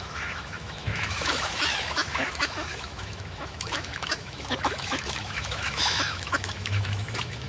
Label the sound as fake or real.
fake